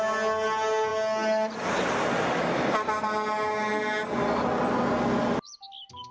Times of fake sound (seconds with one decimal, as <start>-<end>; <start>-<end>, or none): none